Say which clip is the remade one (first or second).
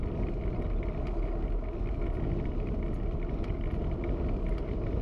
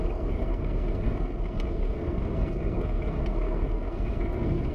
second